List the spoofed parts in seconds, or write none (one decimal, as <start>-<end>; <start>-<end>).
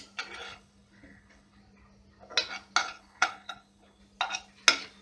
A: 0.4-1.6; 2.8-4.0